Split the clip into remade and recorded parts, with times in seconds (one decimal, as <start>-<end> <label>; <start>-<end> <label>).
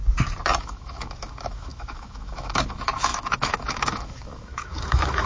0.0-0.6 recorded; 0.6-5.3 remade